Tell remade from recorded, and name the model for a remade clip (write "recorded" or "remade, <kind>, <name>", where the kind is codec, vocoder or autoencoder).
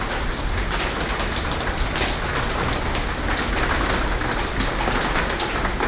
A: recorded